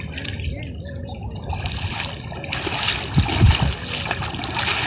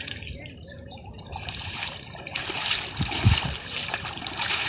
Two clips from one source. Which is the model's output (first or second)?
second